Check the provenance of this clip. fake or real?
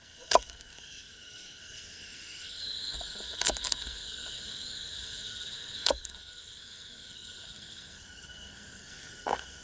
fake